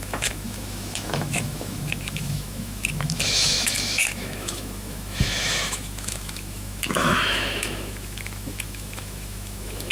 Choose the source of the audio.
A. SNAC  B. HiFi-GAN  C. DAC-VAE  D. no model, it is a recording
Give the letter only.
C